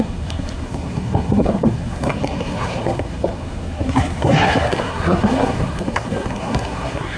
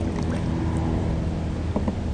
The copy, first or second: first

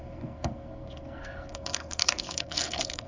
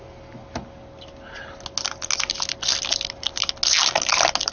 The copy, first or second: first